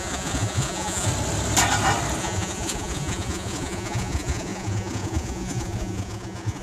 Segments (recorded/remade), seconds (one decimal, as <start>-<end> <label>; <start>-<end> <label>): 0.0-1.1 remade; 1.1-2.2 recorded; 2.2-6.6 remade